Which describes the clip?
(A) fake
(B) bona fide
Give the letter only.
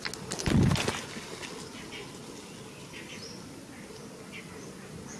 B